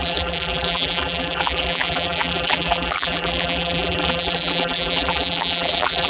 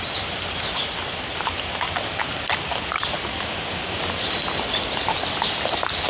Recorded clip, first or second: second